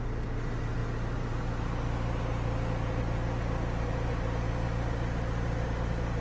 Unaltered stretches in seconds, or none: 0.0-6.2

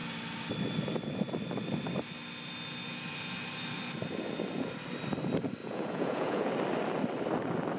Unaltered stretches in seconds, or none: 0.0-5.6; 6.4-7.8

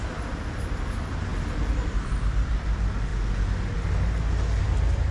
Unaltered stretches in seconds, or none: 3.1-4.6

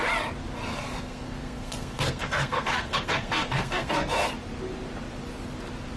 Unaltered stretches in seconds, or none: 0.0-0.7; 4.3-6.0

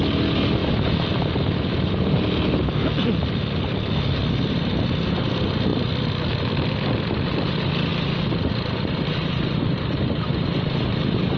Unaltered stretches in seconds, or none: 0.0-0.6; 1.2-7.9; 8.5-11.4